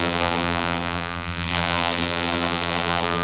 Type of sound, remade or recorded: remade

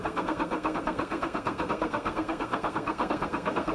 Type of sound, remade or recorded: remade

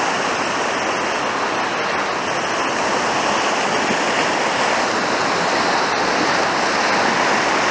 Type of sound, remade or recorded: recorded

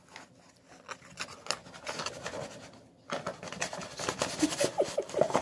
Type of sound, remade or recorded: recorded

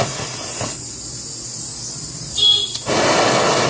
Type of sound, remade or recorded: recorded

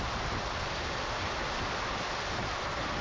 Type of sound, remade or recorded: recorded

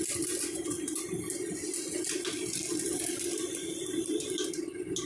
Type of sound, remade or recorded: recorded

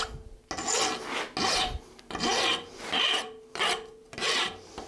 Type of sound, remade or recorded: recorded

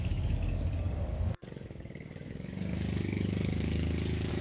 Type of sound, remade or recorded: remade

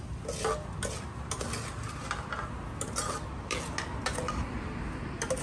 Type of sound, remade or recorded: recorded